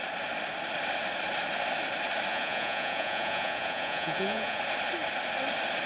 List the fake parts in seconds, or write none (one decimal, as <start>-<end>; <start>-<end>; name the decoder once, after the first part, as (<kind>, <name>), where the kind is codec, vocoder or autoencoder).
2.3-4.6 (vocoder, Vocos)

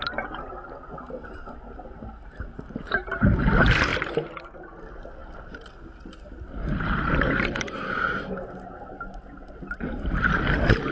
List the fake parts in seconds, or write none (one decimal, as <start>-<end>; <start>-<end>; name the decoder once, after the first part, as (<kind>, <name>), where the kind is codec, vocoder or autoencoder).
none

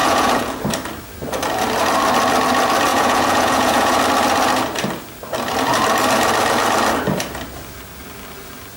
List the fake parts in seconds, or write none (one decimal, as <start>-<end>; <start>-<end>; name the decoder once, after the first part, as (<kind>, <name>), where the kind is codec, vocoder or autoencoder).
0.0-0.6 (vocoder, Vocos); 2.9-4.0

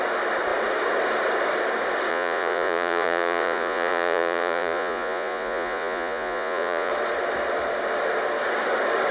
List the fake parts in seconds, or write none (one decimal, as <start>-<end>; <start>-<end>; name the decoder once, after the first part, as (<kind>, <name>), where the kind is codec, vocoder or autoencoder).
2.1-6.9 (vocoder, Vocos)

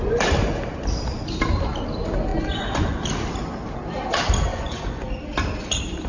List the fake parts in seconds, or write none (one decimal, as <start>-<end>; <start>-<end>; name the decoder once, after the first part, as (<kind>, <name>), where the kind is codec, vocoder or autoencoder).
2.3-3.0 (vocoder, Vocos); 4.5-5.0

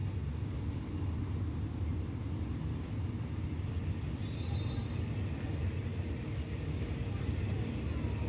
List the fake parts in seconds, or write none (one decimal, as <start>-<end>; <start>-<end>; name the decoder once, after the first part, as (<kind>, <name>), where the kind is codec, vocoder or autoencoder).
none

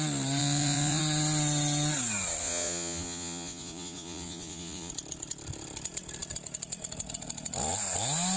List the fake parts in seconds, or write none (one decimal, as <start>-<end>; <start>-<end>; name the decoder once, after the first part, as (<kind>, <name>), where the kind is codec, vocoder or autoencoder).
0.4-1.0 (vocoder, Vocos); 2.4-4.9

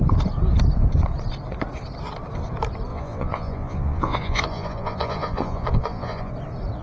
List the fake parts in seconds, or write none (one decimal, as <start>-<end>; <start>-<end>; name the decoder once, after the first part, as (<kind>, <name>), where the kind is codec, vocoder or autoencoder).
2.9-6.3 (vocoder, Vocos)